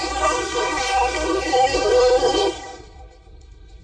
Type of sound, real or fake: fake